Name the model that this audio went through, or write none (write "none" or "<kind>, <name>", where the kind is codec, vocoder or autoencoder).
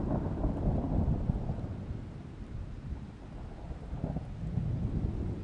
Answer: none